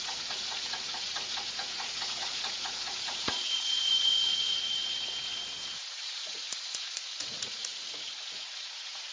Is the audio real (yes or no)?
no